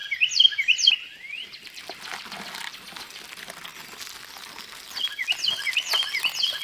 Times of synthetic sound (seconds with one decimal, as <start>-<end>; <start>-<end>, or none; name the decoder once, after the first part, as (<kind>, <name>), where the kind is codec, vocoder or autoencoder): none